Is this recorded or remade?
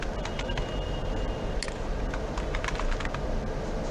recorded